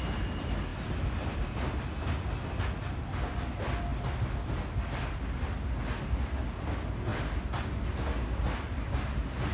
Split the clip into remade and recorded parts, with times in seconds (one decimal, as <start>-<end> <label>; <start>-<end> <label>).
0.0-9.5 recorded